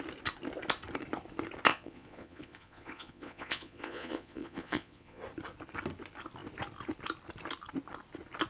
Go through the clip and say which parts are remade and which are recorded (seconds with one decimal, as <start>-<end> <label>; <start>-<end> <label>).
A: 0.0-1.7 recorded; 1.7-5.2 remade; 5.2-8.5 recorded